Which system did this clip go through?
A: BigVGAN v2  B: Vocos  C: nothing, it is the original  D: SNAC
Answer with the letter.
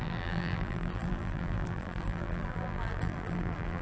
A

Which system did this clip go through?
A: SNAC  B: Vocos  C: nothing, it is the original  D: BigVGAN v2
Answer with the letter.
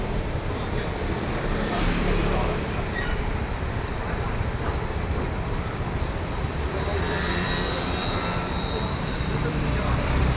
D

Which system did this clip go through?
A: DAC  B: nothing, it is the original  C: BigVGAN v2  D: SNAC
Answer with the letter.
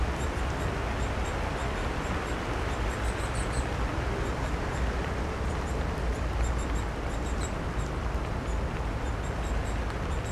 B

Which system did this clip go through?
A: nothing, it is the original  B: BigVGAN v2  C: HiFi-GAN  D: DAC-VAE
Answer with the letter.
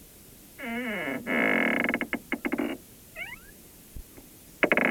A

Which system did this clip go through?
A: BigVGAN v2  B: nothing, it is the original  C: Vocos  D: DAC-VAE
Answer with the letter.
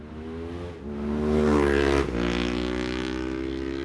B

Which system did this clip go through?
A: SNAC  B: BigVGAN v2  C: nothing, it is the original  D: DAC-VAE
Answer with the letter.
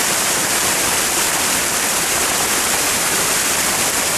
B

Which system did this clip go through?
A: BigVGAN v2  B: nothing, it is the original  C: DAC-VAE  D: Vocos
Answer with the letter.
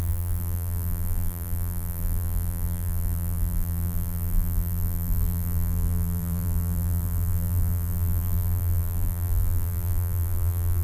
A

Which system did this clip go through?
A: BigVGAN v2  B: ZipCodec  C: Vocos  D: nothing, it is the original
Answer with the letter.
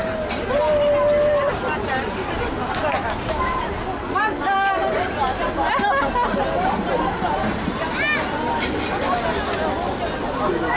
D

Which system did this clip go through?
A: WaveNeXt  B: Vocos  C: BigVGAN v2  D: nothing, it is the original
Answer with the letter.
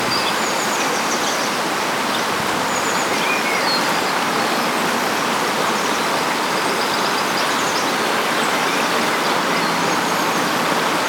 D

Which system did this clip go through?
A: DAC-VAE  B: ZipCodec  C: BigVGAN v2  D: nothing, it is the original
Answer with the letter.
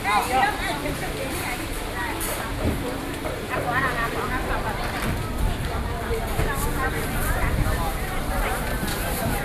C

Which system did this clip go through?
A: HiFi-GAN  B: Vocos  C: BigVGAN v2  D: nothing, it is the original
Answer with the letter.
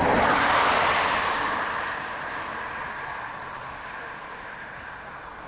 C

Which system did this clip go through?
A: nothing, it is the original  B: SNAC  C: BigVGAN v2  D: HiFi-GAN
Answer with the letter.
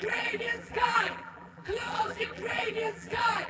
C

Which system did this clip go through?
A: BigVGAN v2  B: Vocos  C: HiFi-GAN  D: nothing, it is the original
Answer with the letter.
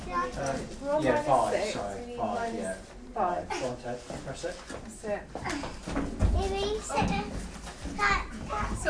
D